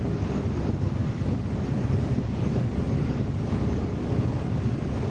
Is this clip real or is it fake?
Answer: fake